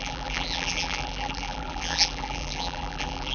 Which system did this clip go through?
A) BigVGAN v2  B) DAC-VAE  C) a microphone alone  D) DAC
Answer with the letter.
A